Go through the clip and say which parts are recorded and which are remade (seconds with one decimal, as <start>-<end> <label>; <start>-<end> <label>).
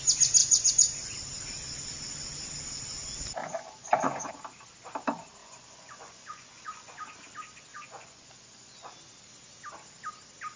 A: 0.0-0.4 recorded; 0.4-1.1 remade; 1.1-3.4 recorded; 3.4-4.3 remade; 4.3-5.4 recorded; 5.4-6.9 remade; 6.9-7.7 recorded; 7.7-8.9 remade; 8.9-10.6 recorded